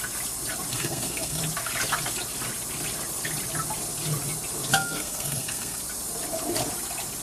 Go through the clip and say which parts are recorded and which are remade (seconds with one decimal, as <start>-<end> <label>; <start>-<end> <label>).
0.0-0.7 recorded; 0.7-1.4 remade; 1.4-4.7 recorded; 4.7-5.8 remade; 5.8-7.2 recorded